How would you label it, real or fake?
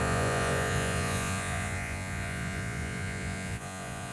fake